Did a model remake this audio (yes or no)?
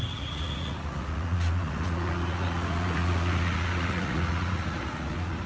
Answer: yes